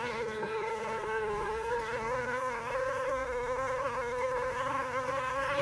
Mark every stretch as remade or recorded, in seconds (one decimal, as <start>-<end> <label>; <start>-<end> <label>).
0.0-5.6 remade